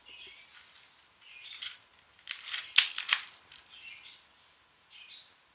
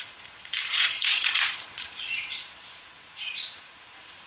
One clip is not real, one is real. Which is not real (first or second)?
second